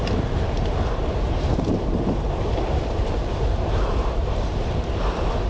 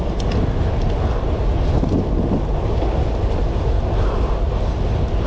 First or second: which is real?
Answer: second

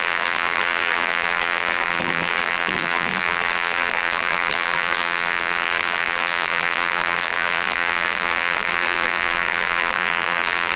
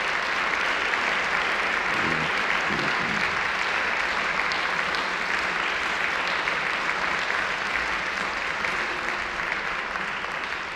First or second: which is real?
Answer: second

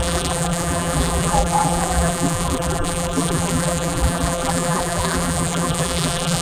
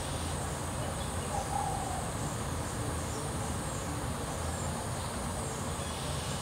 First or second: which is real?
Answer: second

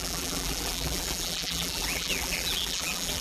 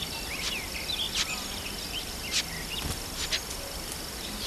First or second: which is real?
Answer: second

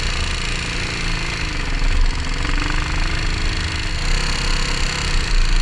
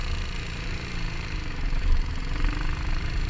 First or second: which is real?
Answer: first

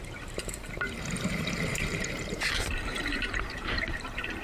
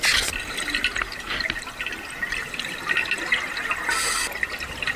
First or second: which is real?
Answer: second